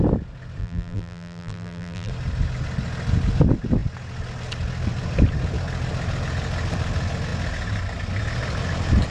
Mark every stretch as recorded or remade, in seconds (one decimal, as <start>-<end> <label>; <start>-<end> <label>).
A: 0.0-0.6 recorded; 0.6-2.1 remade; 2.1-9.1 recorded